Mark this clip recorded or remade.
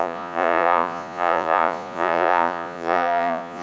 remade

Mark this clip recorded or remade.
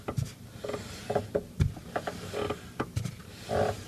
recorded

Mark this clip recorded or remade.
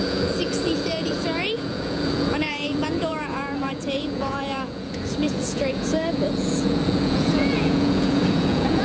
remade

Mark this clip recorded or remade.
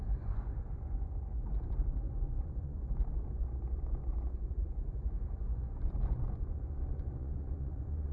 remade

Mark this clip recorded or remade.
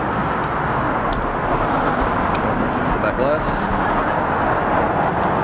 recorded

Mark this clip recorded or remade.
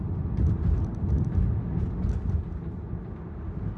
recorded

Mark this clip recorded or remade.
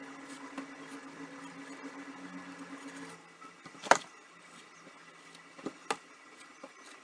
recorded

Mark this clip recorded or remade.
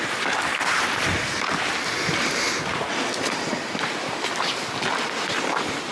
recorded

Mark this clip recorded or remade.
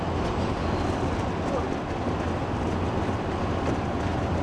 recorded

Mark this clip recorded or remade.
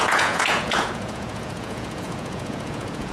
remade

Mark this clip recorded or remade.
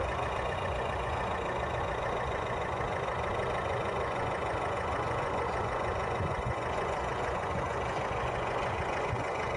remade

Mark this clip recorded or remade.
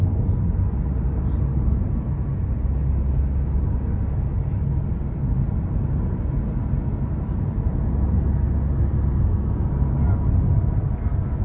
recorded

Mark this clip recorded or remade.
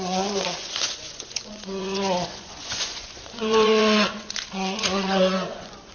remade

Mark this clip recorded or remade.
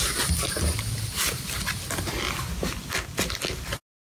recorded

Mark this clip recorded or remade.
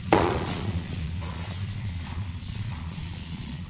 remade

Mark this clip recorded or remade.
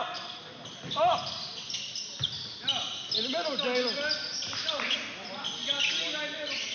recorded